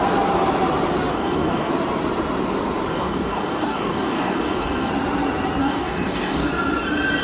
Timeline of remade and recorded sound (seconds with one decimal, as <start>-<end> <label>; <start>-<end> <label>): 0.0-1.1 recorded; 1.1-1.7 remade; 1.7-2.9 recorded; 2.9-4.9 remade; 4.9-5.6 recorded; 5.6-6.5 remade; 6.5-7.2 recorded